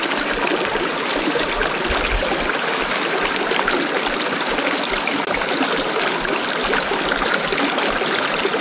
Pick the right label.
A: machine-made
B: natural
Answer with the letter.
B